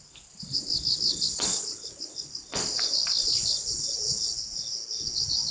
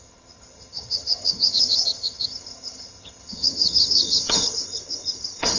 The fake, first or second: second